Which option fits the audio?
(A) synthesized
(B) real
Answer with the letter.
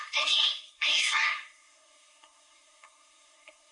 A